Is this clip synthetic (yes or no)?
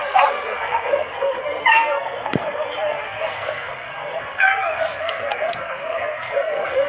yes